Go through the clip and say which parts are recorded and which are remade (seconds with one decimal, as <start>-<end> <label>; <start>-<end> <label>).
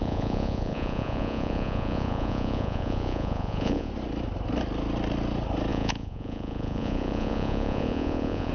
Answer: 0.0-3.9 remade; 3.9-5.7 recorded; 5.7-8.5 remade